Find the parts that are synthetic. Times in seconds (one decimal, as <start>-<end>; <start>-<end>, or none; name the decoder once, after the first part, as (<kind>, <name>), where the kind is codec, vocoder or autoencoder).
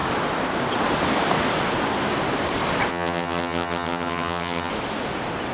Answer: 2.9-4.7 (vocoder, HiFi-GAN)